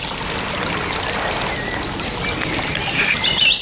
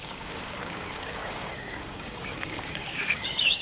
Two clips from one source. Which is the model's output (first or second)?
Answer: second